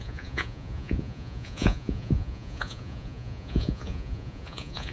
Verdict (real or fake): fake